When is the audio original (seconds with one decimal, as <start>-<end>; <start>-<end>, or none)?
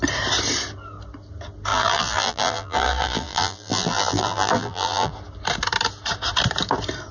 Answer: 0.0-1.7; 5.1-7.1